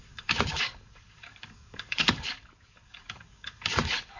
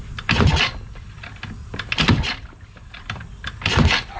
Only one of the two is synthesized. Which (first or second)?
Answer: first